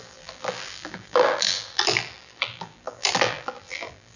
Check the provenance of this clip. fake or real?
fake